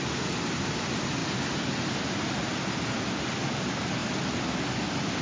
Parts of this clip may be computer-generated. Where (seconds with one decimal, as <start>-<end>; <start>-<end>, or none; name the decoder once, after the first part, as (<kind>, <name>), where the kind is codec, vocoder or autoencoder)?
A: none